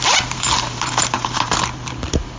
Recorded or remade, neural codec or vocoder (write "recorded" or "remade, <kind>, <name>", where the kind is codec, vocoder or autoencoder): remade, vocoder, BigVGAN v2